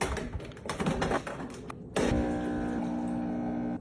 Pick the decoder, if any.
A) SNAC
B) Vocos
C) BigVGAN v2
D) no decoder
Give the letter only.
D